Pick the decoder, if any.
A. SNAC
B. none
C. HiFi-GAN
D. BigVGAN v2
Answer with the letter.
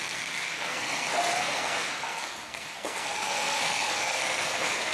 A